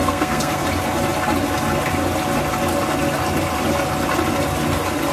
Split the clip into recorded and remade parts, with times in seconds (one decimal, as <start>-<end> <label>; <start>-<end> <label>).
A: 0.0-0.6 remade; 0.6-5.1 recorded